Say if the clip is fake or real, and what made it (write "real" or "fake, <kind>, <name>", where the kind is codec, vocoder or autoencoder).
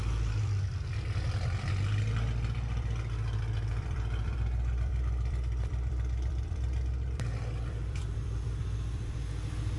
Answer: fake, vocoder, BigVGAN v2